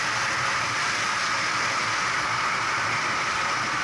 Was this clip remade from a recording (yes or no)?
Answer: no